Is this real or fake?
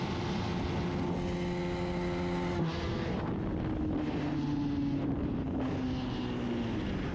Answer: real